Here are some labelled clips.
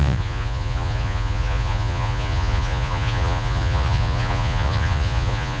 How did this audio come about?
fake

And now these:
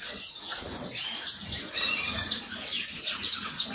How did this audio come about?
fake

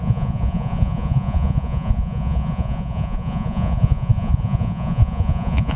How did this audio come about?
fake